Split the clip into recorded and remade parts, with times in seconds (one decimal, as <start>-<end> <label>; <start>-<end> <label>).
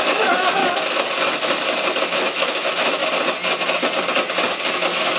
0.0-0.6 remade; 0.6-2.0 recorded; 2.0-3.0 remade; 3.0-4.7 recorded; 4.7-5.2 remade